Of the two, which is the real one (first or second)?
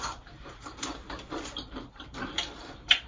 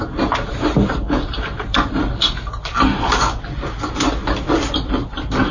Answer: second